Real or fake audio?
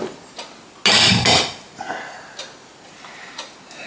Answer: real